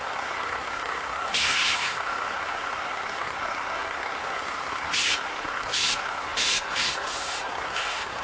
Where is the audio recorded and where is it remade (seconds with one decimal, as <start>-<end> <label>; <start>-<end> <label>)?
0.0-8.2 remade